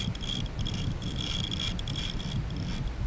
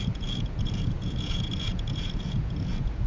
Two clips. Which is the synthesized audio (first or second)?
second